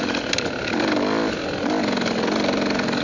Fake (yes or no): no